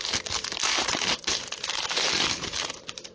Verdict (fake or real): fake